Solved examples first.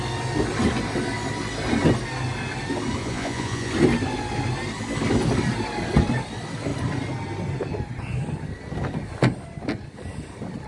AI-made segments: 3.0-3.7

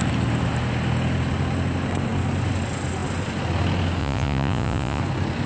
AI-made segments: 4.0-5.0

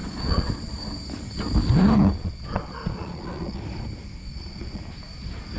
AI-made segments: 0.0-0.5; 2.2-3.6; 4.3-4.8